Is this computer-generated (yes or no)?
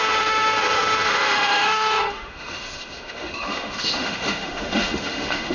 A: yes